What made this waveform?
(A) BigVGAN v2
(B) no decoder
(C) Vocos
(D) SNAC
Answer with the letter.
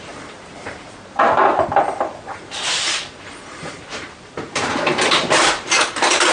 A